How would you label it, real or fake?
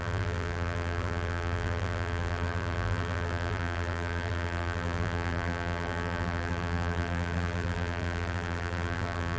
fake